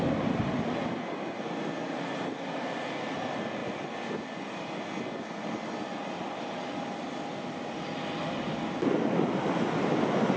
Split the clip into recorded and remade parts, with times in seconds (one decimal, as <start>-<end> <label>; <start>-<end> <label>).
0.0-10.4 recorded